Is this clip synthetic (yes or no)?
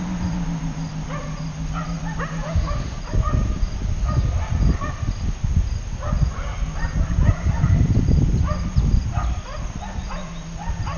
no